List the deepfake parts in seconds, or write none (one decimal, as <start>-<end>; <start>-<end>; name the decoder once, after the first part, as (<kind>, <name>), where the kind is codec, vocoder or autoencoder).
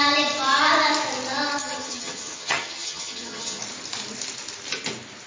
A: 1.6-3.6 (vocoder, HiFi-GAN)